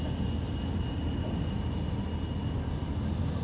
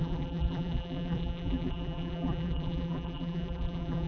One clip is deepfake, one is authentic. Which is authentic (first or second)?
first